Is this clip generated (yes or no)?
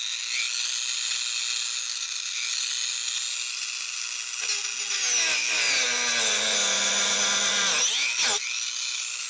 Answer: no